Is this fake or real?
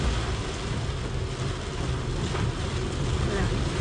real